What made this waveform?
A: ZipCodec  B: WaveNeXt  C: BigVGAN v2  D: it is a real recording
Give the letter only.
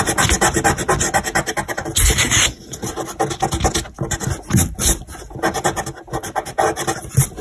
D